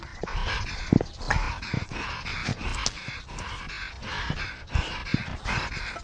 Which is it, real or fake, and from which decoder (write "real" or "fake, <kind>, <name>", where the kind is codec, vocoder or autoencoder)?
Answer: real